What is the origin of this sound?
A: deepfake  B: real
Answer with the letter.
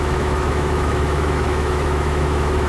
A